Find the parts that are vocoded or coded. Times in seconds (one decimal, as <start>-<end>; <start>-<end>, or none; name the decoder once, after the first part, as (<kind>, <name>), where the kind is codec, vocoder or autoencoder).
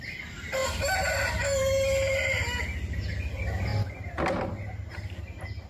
none